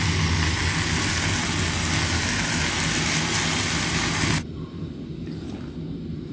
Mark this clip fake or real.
real